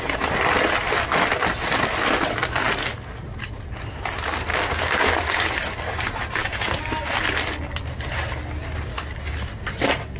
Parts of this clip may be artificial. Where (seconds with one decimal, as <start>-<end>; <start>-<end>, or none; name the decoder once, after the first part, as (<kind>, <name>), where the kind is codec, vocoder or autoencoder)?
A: 4.5-5.1 (codec, DAC)